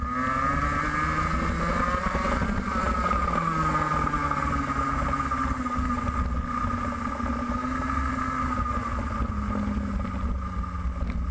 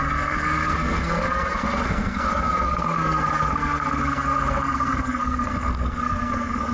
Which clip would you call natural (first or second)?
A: first